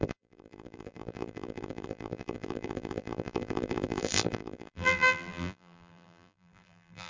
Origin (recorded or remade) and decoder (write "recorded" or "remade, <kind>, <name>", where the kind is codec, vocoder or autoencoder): remade, vocoder, BigVGAN v2